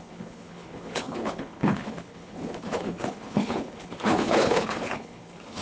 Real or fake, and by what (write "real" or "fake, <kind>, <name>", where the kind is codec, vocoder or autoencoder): fake, codec, HILCodec